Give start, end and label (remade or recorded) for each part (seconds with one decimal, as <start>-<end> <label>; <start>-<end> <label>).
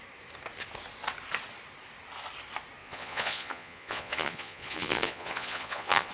0.0-2.8 recorded; 2.8-6.1 remade